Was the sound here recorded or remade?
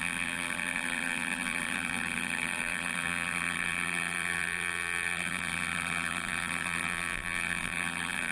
remade